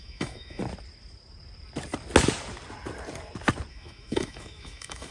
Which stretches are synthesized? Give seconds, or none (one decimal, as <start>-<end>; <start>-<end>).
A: 0.0-0.6; 3.7-5.1